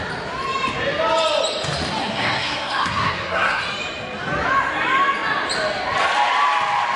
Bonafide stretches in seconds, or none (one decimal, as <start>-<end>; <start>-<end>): 0.0-2.0; 3.6-7.0

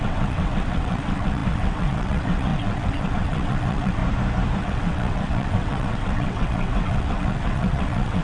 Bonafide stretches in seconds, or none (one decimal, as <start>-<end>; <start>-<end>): 4.0-4.6

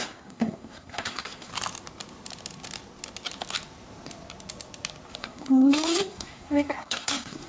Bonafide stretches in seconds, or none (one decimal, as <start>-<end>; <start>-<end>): 1.5-5.2

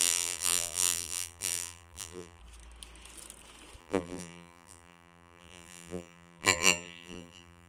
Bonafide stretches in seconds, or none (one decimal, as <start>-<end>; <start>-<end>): 2.4-3.8

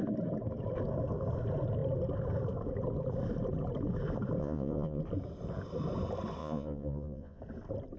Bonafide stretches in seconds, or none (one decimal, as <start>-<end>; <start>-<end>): 0.0-4.4; 5.0-6.4; 7.4-8.0

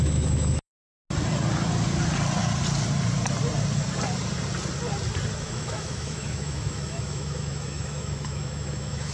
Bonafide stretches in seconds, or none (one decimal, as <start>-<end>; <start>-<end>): 1.0-5.4

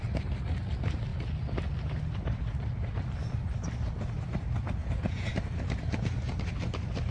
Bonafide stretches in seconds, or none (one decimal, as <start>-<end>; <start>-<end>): 0.0-4.8; 5.3-7.1